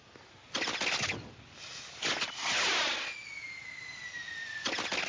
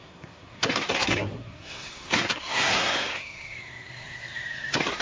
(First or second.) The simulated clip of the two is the second